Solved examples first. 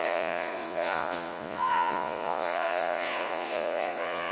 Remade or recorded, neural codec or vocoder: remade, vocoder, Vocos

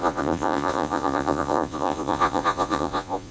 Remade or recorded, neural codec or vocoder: remade, vocoder, Vocos